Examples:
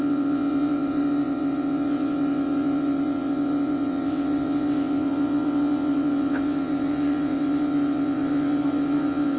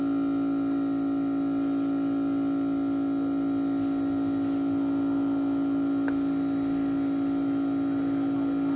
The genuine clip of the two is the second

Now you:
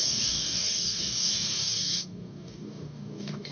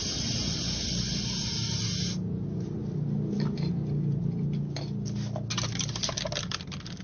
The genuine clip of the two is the second